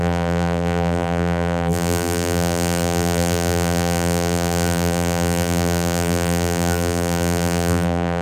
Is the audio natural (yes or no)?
no